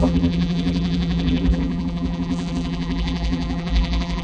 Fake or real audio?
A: fake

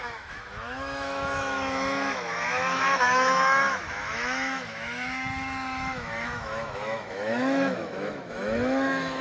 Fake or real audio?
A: fake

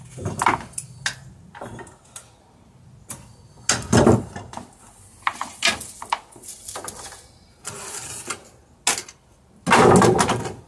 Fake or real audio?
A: real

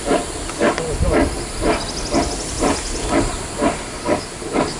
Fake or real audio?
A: real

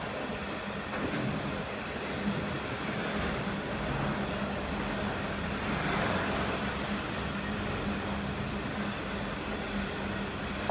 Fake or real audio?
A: real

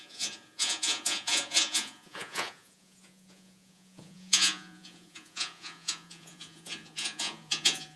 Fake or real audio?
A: fake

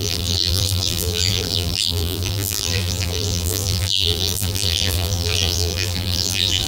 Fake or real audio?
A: fake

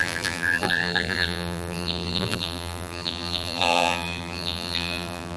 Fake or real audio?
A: fake